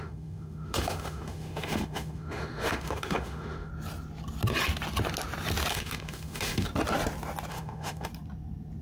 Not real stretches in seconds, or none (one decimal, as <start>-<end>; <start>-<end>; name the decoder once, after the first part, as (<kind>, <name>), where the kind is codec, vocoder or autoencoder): 0.0-3.7 (autoencoder, DAC-VAE); 5.7-6.7; 7.5-8.1